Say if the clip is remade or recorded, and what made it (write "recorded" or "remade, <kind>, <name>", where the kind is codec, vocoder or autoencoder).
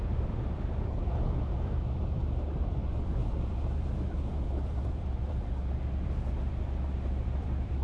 remade, vocoder, BigVGAN v2